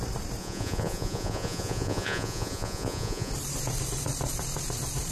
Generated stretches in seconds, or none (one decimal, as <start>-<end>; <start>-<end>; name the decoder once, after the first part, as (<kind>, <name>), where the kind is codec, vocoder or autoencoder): 0.4-3.3 (vocoder, Vocos)